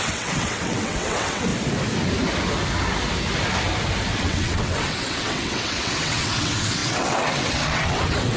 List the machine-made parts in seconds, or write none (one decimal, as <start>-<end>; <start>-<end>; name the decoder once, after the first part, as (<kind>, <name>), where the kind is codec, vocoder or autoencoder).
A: 0.0-1.5 (vocoder, WaveNeXt); 4.2-8.4